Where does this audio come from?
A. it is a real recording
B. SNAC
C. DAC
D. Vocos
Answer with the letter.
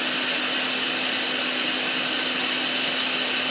A